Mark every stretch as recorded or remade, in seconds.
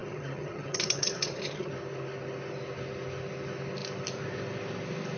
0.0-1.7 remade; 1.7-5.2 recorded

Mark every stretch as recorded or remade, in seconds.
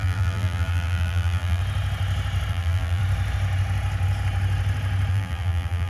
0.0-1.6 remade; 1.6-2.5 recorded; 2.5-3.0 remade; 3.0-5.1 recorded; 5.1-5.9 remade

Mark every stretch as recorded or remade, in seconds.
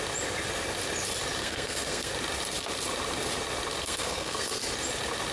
0.0-1.4 recorded; 1.4-2.1 remade; 2.1-3.8 recorded; 3.8-4.6 remade; 4.6-5.3 recorded